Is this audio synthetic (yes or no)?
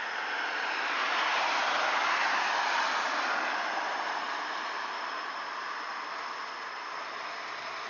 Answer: no